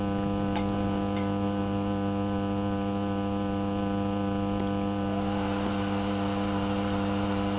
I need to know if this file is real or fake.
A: real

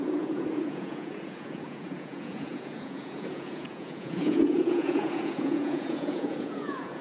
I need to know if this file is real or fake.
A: fake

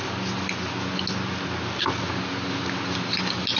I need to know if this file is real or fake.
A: real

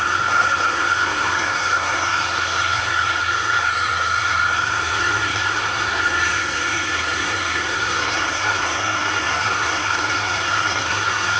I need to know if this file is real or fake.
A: fake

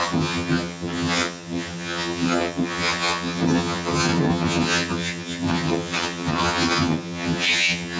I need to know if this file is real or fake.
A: fake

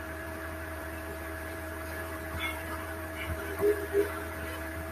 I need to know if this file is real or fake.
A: fake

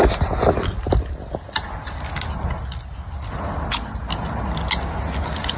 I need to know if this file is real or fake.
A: real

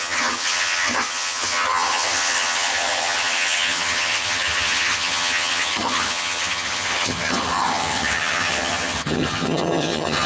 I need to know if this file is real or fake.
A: fake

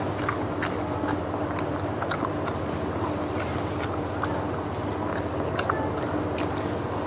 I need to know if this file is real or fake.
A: real